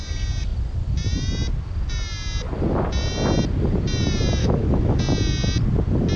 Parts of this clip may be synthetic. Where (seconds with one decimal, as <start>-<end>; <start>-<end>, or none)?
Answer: 4.4-5.0